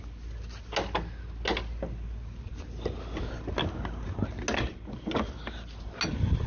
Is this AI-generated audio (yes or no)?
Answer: no